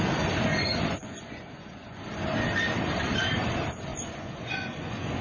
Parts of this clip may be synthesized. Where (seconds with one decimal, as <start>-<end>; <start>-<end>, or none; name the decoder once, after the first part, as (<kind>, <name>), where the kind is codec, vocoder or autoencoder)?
0.5-2.0 (vocoder, Vocos); 3.9-5.2